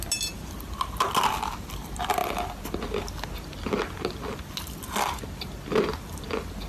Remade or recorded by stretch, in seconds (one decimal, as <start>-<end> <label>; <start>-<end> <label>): 0.0-6.7 recorded